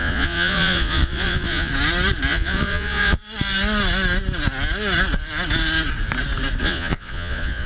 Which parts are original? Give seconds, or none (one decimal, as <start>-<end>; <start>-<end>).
1.7-2.3; 3.2-6.6

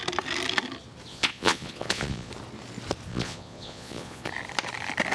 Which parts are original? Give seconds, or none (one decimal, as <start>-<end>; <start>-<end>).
0.0-1.1; 2.3-3.1; 4.3-5.1

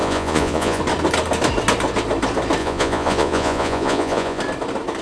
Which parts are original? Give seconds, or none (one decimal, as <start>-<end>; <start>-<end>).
0.8-2.6; 4.4-5.0